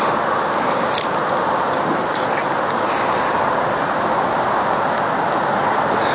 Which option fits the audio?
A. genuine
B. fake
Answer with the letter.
A